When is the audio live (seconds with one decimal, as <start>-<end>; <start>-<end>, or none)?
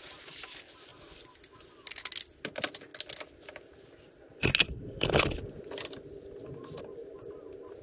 0.0-7.8